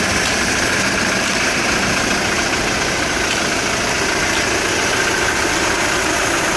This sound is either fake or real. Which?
real